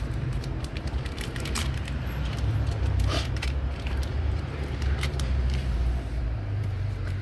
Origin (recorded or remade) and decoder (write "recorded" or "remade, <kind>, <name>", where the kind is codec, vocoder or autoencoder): remade, vocoder, BigVGAN v2